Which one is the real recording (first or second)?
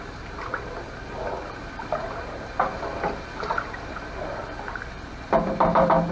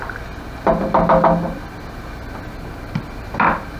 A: second